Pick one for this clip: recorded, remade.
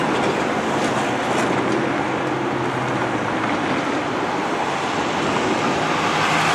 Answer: recorded